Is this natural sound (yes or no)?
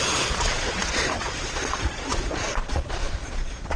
no